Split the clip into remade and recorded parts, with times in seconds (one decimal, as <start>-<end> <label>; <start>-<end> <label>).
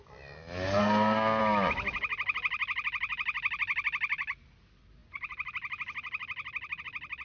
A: 0.0-0.8 recorded; 0.8-1.4 remade; 1.4-7.2 recorded